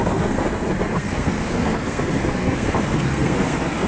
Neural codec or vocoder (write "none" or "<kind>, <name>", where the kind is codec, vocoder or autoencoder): codec, SNAC